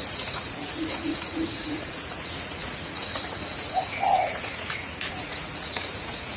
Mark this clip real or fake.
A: fake